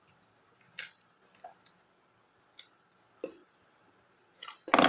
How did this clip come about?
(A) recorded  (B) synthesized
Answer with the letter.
A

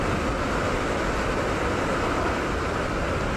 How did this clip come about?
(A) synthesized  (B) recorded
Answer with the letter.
B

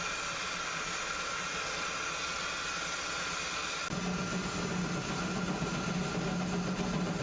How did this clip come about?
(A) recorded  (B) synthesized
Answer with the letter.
A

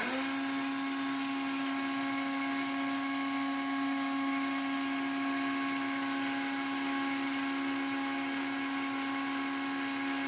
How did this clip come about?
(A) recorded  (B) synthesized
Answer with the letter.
A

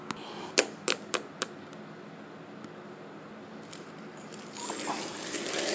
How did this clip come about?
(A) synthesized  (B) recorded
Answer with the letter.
B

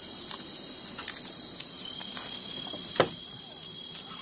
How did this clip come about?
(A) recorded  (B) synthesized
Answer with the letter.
B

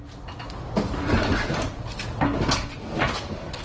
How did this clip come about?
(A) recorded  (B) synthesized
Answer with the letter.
A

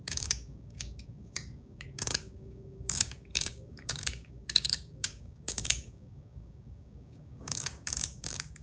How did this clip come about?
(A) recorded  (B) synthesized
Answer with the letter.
B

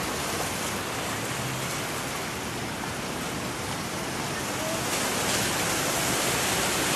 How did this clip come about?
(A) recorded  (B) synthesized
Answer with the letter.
A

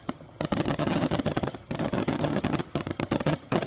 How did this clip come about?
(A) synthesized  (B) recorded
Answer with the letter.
A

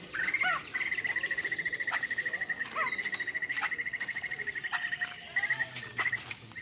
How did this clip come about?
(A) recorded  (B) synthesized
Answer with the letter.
A